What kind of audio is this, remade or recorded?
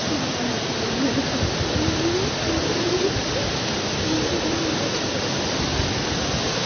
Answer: recorded